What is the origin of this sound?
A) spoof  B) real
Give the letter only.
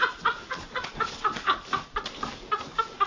B